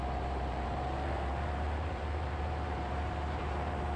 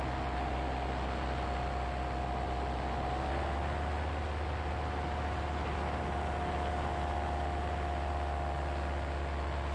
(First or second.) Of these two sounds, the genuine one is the second